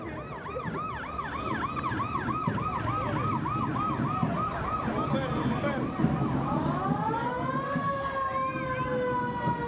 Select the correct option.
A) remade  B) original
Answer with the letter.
B